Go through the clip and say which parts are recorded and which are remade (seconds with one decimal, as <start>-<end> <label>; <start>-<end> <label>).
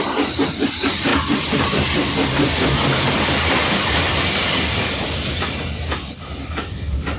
0.0-7.2 recorded